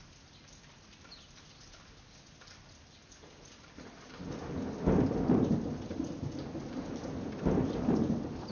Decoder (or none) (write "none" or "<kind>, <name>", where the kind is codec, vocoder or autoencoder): none